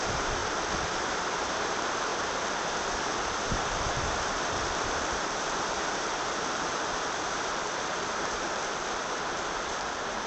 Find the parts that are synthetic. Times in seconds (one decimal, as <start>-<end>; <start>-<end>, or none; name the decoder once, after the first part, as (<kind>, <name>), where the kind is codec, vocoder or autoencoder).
0.0-0.4 (vocoder, BigVGAN v2); 1.0-8.6; 9.7-10.3